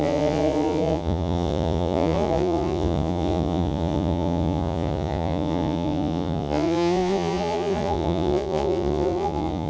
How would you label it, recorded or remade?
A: remade